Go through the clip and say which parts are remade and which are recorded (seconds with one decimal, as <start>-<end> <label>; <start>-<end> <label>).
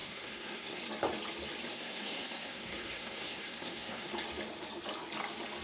0.0-0.8 remade; 0.8-1.7 recorded; 1.7-4.1 remade; 4.1-5.6 recorded